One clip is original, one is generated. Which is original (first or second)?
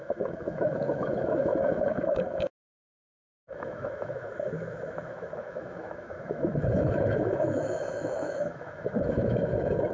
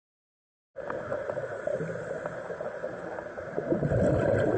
second